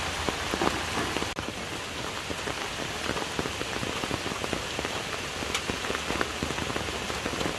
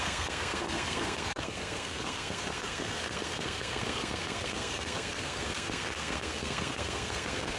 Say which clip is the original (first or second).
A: first